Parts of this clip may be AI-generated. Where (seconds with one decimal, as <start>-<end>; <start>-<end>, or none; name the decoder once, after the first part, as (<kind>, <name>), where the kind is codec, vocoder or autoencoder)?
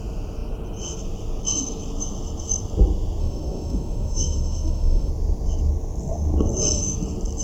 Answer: 3.2-5.1 (autoencoder, DAC-VAE)